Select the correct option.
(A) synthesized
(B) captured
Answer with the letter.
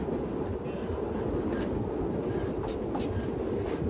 B